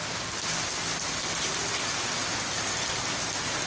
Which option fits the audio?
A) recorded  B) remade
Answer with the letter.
A